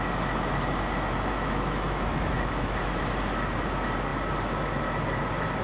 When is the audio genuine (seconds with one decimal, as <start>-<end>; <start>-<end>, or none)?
0.0-1.3; 3.0-5.6